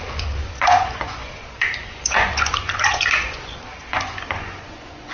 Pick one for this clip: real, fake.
fake